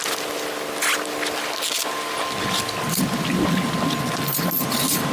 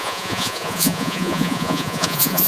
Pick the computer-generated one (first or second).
second